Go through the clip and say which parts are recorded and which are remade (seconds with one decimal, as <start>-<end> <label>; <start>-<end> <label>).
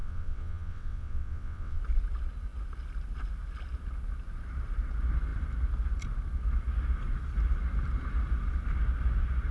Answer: 0.0-1.8 remade; 1.8-9.5 recorded